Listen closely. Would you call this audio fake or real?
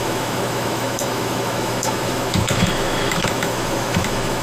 fake